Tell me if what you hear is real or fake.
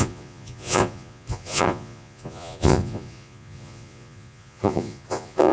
fake